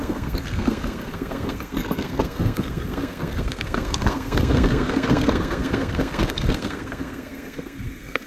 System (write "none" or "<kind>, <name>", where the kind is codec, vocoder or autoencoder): codec, SNAC